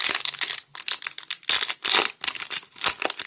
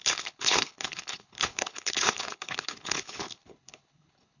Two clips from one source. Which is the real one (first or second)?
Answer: first